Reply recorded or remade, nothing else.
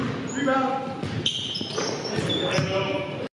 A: recorded